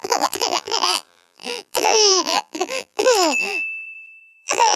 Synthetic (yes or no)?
yes